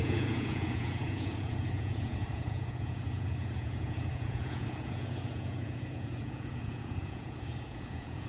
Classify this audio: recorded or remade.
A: remade